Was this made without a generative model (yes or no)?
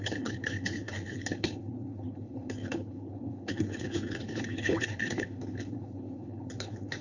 no